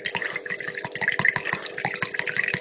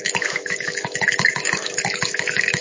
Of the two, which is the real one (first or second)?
first